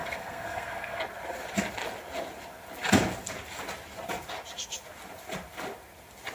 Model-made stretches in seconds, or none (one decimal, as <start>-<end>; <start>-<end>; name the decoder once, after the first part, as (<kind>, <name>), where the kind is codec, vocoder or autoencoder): 0.0-1.0 (codec, SNAC)